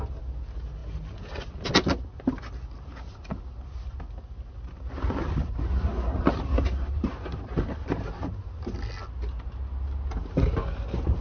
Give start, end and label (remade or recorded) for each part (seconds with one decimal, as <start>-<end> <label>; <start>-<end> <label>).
0.0-11.2 recorded